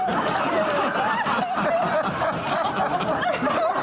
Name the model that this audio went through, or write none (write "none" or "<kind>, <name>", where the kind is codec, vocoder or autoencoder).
none